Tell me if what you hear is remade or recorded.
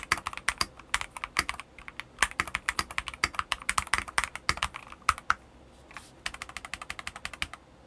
recorded